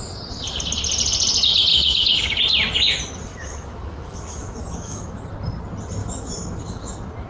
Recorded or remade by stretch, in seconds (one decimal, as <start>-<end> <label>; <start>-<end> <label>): 0.0-1.7 recorded; 1.7-2.4 remade; 2.4-3.3 recorded; 3.3-5.2 remade; 5.2-6.0 recorded; 6.0-6.6 remade; 6.6-7.3 recorded